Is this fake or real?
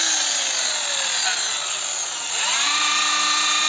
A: real